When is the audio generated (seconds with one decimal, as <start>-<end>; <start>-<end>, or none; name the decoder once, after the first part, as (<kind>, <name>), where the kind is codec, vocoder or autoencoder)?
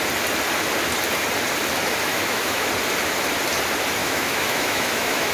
2.1-2.7 (autoencoder, DAC-VAE); 4.0-5.3